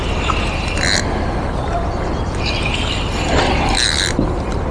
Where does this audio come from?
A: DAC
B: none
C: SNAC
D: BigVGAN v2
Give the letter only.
B